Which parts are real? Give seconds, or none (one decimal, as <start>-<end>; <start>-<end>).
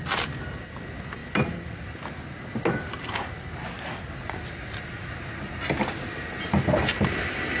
0.0-7.6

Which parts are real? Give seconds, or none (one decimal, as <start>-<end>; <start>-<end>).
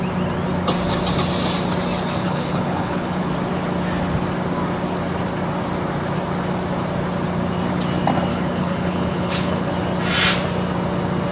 0.0-2.2; 3.3-8.3; 9.7-11.3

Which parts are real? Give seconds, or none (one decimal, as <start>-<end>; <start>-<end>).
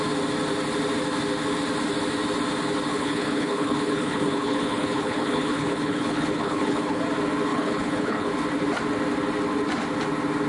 0.0-2.9; 7.0-7.5; 8.3-10.5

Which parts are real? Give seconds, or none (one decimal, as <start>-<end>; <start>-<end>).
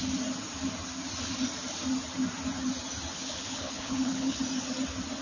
0.0-3.1; 4.4-5.2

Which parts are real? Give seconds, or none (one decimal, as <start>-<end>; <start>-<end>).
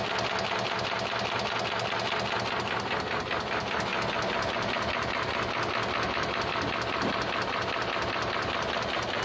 0.0-9.2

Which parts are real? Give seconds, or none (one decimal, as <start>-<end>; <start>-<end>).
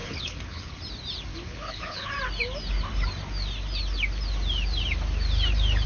0.8-1.3; 2.1-5.9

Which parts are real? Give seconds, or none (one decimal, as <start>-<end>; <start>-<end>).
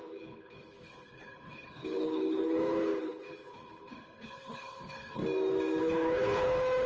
5.2-5.8